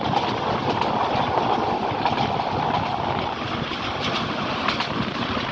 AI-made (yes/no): no